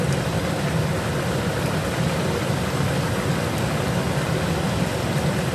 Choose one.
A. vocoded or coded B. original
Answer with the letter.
B